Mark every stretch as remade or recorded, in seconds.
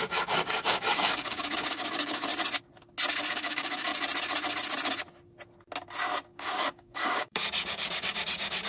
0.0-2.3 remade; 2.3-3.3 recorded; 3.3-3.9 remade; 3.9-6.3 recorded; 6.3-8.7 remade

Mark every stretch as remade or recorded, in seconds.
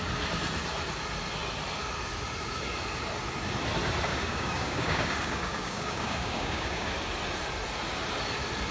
0.0-4.1 recorded; 4.1-6.9 remade; 6.9-8.7 recorded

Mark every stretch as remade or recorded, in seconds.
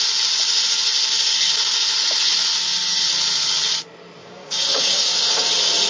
0.0-4.2 recorded; 4.2-5.5 remade; 5.5-5.9 recorded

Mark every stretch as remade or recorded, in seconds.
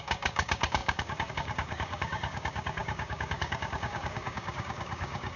0.0-5.4 remade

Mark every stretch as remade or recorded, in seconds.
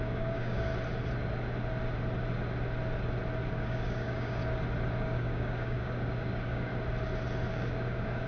0.0-0.7 remade; 0.7-3.5 recorded; 3.5-4.4 remade; 4.4-5.0 recorded; 5.0-6.7 remade; 6.7-7.5 recorded; 7.5-8.3 remade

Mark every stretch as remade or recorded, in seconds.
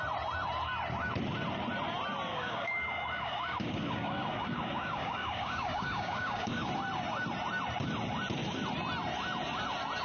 0.0-2.3 recorded; 2.3-6.7 remade; 6.7-10.0 recorded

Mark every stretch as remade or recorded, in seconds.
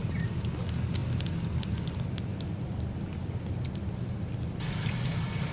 0.0-5.5 recorded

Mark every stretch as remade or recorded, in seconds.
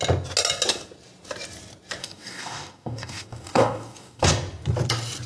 0.0-2.0 recorded; 2.0-4.3 remade; 4.3-5.3 recorded